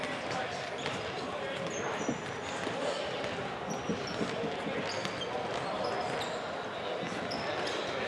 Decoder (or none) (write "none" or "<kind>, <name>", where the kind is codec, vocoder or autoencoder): none